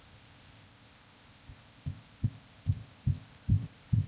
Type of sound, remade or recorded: remade